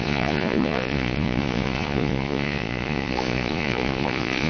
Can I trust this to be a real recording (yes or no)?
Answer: no